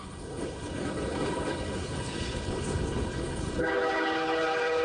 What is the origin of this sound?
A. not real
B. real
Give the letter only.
A